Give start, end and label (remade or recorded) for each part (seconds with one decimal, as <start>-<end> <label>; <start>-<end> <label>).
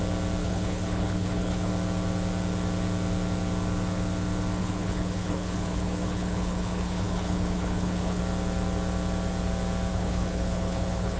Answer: 0.0-0.4 recorded; 0.4-1.7 remade; 1.7-4.6 recorded; 4.6-8.2 remade; 8.2-9.9 recorded; 9.9-11.2 remade